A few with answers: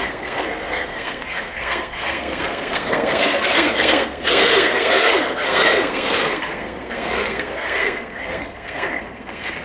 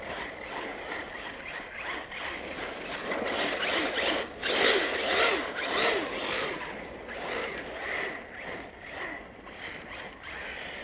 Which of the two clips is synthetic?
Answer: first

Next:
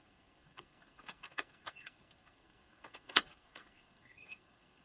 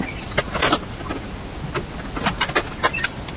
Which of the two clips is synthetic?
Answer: first